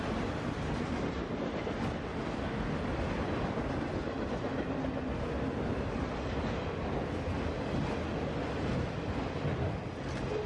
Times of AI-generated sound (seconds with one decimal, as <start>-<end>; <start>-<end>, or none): none